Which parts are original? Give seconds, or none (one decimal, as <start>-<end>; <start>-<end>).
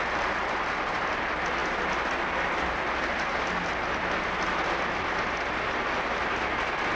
0.0-7.0